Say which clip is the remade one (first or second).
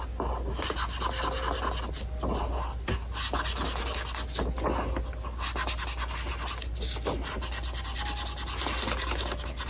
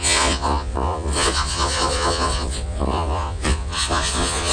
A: second